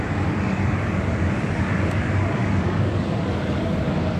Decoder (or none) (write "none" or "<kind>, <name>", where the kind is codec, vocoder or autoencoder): codec, DAC